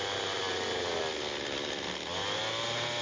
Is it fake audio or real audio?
real